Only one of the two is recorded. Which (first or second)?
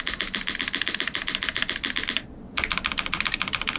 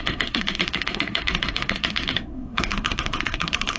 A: first